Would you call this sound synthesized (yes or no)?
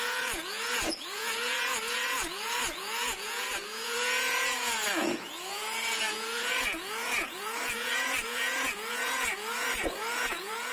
yes